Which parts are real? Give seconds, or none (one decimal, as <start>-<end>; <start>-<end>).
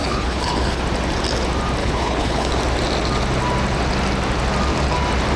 0.8-1.8; 2.5-5.4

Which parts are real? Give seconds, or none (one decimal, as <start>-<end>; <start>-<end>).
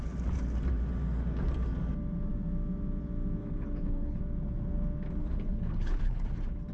0.0-3.4; 4.2-5.2; 6.3-6.7